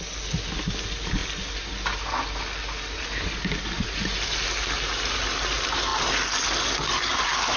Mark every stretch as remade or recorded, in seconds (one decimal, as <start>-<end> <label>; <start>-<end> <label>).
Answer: 0.0-7.6 recorded